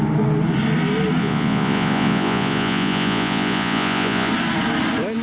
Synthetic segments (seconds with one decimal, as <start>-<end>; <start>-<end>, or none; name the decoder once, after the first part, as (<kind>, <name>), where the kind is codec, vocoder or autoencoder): 1.2-4.3 (vocoder, Vocos)